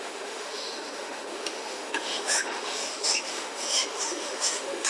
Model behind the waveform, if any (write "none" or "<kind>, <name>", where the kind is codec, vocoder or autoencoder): autoencoder, DAC-VAE